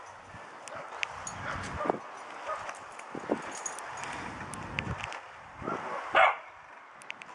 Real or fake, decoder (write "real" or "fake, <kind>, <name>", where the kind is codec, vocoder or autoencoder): real